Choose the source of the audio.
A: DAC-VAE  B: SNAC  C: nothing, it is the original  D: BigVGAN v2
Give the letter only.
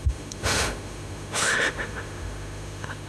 A